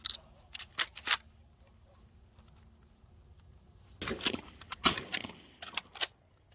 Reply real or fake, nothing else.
real